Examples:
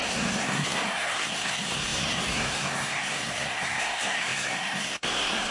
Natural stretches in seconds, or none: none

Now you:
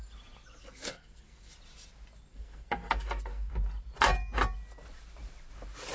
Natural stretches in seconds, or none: 0.0-0.6; 1.5-2.3; 3.5-5.9

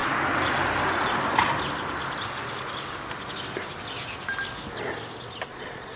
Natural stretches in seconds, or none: 0.0-5.5

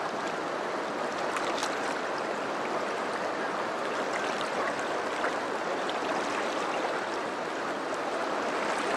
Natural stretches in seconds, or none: 0.0-9.0

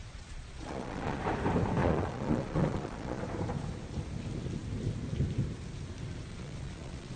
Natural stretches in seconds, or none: 1.2-1.8; 3.2-6.3

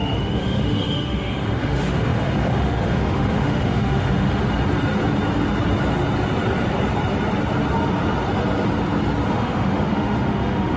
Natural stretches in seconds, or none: 4.4-9.3

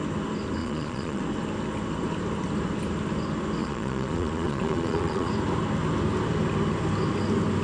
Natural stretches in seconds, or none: 0.0-0.6; 1.2-3.6; 5.3-7.6